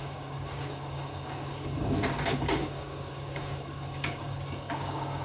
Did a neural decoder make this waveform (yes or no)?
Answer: yes